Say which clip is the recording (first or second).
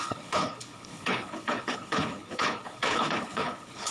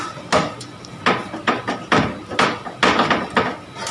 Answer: second